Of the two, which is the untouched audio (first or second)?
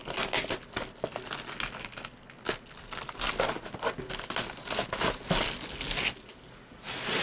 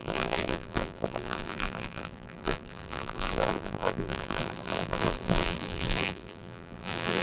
first